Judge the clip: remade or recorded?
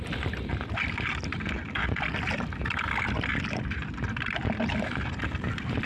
recorded